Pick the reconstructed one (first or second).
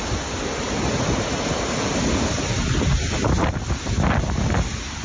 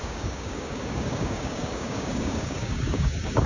second